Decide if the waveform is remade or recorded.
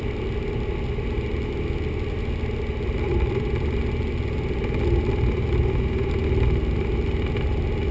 recorded